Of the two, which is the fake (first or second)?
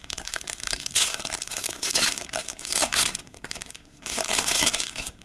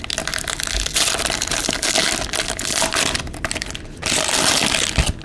first